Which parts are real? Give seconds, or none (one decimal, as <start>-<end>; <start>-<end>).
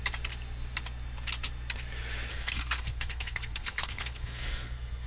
0.0-2.3